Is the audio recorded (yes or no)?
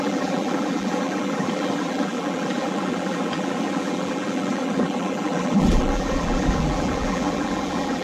no